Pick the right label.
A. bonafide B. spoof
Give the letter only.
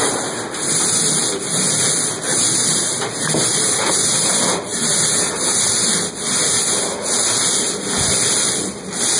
A